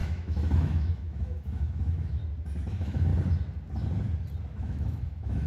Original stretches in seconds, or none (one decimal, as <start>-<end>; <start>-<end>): 2.2-2.7; 3.1-4.5